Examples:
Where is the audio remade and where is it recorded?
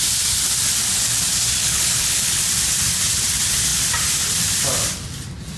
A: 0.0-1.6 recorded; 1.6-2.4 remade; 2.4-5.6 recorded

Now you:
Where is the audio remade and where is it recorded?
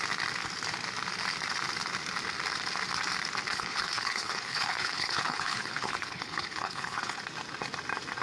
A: 0.0-3.5 recorded; 3.5-7.2 remade; 7.2-8.2 recorded